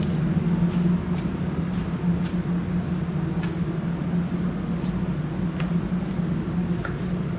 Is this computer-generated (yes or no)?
no